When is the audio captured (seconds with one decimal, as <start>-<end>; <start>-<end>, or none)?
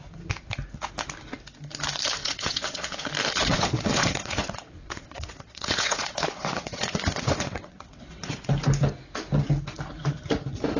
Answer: 0.0-2.2; 3.1-3.5; 8.5-10.8